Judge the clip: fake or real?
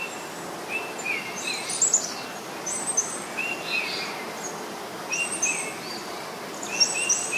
real